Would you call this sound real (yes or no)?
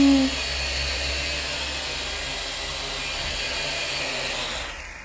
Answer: yes